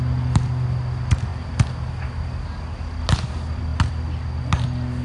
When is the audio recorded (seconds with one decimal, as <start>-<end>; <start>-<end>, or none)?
0.0-5.0